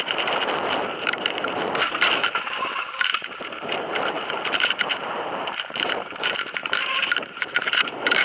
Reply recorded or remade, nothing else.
remade